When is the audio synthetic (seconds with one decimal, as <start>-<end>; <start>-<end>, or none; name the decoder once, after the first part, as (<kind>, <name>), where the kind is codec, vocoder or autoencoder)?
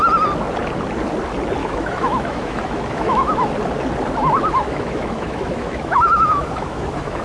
1.6-3.5 (autoencoder, DAC-VAE); 4.6-7.2